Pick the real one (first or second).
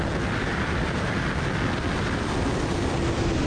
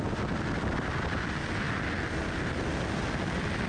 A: second